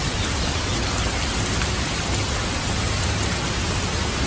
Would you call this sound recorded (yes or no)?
yes